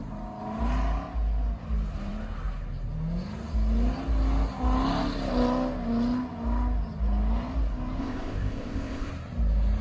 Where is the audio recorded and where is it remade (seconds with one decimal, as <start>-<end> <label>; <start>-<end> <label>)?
0.0-8.0 recorded; 8.0-9.1 remade; 9.1-9.8 recorded